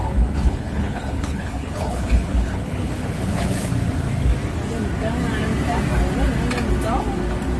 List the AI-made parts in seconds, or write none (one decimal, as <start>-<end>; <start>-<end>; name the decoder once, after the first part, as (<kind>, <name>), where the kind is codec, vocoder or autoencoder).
0.0-3.7 (codec, HILCodec)